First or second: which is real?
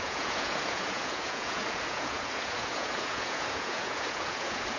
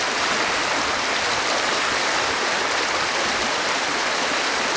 second